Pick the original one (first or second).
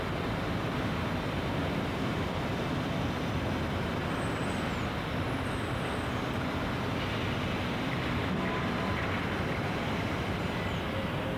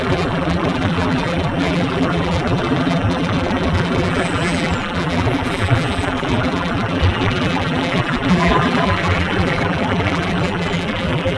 first